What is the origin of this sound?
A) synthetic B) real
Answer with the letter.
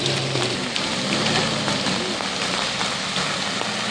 B